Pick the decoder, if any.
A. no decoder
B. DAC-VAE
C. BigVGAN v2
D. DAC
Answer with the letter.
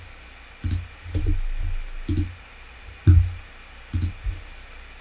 A